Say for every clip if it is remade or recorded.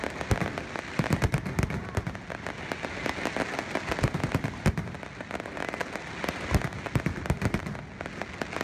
recorded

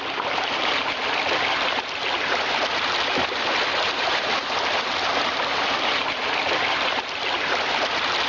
recorded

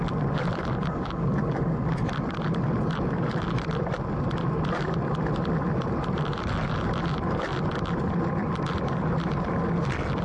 recorded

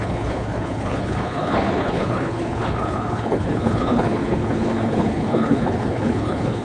remade